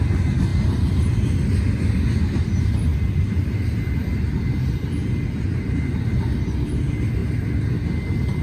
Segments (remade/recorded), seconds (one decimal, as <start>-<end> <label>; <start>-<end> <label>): 0.0-8.4 recorded